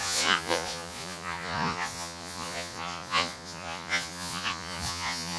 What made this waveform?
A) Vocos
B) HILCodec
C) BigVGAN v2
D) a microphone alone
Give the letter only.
A